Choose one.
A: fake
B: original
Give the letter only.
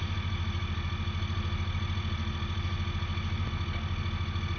B